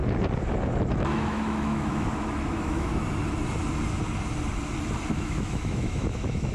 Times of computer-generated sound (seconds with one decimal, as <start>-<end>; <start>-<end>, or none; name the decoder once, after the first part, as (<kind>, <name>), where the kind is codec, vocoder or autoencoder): 0.9-2.9 (autoencoder, DAC-VAE); 5.1-6.5